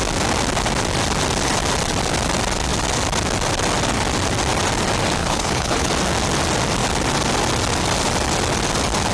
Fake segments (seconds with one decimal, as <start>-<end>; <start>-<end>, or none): 5.2-5.9